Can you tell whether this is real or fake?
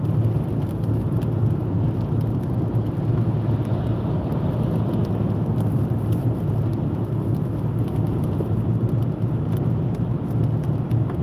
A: real